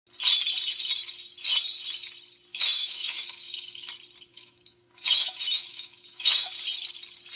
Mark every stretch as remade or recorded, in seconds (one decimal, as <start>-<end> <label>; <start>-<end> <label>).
0.0-2.5 recorded; 2.5-3.9 remade; 3.9-4.3 recorded; 4.3-6.5 remade; 6.5-7.4 recorded